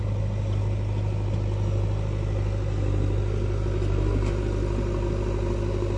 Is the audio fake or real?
real